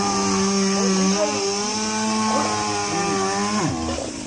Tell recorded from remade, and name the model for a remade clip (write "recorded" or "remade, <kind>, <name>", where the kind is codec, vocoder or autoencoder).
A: recorded